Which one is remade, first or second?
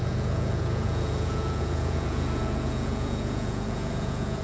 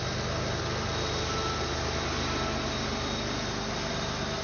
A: first